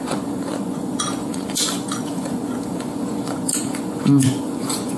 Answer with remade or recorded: remade